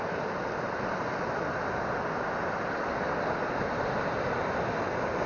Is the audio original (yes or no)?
yes